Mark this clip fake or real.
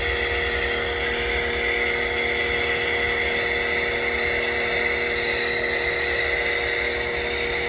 real